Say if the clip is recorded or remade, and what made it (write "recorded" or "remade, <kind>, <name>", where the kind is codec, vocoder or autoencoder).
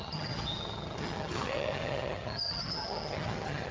remade, vocoder, HiFi-GAN